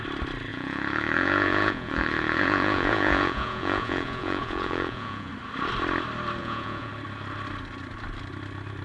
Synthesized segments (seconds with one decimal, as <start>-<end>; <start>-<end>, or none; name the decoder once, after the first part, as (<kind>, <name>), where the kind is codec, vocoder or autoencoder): 0.5-5.3 (vocoder, Vocos); 6.4-6.9